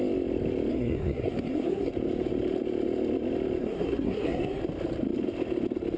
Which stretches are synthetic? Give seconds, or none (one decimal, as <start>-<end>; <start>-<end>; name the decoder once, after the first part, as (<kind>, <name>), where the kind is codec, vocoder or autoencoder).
0.7-1.9 (codec, SNAC); 3.6-4.6